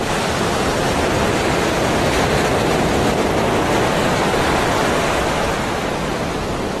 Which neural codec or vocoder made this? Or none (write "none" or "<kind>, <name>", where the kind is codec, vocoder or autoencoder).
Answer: vocoder, BigVGAN v2